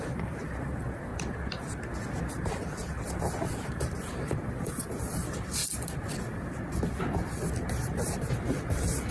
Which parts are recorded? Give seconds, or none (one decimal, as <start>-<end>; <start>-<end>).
1.1-2.3; 5.6-7.7